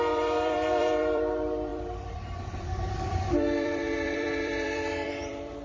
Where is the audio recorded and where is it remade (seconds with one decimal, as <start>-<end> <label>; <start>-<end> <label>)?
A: 0.0-5.6 remade